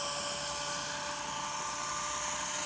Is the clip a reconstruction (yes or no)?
no